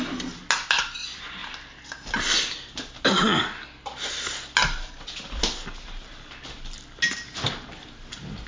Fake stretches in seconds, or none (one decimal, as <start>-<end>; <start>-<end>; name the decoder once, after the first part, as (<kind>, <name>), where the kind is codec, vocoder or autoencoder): none